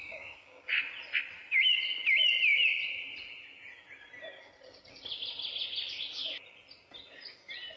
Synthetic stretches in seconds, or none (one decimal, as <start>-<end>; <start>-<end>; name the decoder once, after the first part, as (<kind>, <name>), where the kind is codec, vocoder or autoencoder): 0.0-0.7 (codec, DAC)